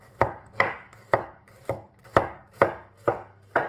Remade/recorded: remade